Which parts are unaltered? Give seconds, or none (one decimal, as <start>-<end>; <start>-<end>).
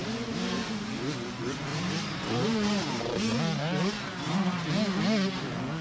0.0-1.7; 4.7-5.8